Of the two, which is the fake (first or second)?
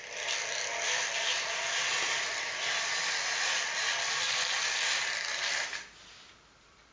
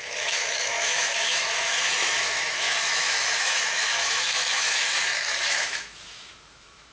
second